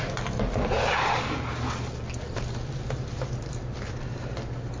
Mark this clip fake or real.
real